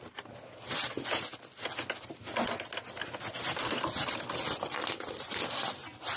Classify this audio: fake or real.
real